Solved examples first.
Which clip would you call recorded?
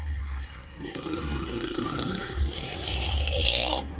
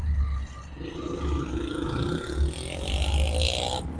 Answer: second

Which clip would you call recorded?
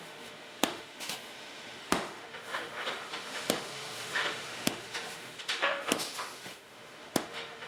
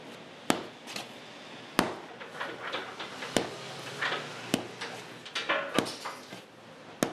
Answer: second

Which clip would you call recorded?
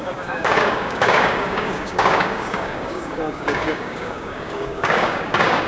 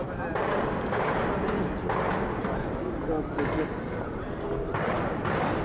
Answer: second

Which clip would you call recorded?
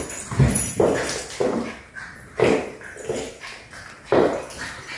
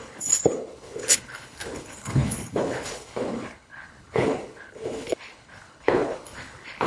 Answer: first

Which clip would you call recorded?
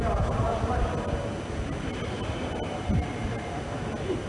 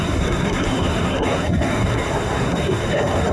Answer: first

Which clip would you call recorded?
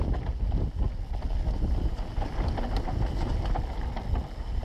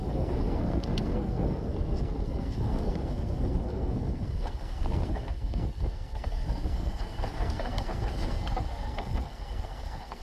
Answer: first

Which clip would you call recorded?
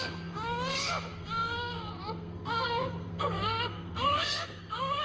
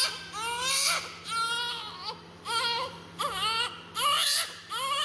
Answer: second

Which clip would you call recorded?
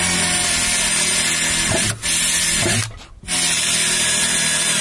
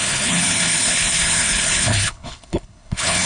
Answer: first